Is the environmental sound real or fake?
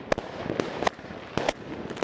real